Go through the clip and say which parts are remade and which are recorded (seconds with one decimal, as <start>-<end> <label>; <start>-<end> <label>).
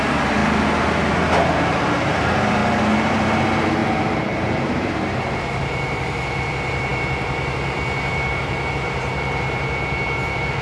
0.0-0.4 remade; 0.4-1.1 recorded; 1.1-2.6 remade; 2.6-3.1 recorded; 3.1-10.6 remade